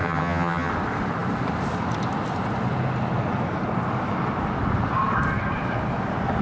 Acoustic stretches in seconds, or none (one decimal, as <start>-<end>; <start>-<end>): 0.7-6.4